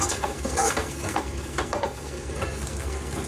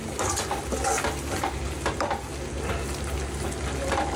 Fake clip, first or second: first